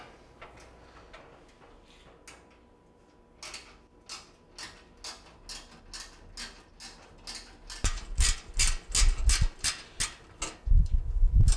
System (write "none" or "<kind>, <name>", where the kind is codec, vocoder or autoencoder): none